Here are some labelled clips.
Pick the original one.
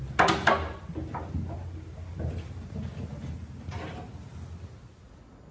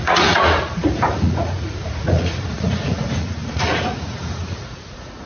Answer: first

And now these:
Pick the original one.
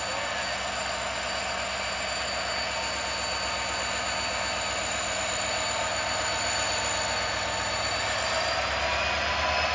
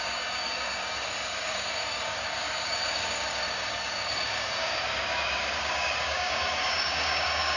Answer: first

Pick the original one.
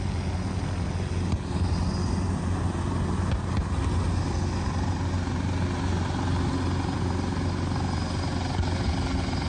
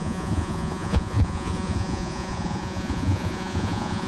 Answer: first